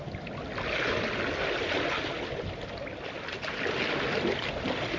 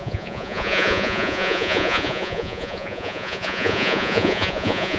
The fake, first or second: second